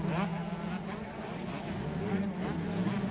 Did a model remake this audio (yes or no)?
no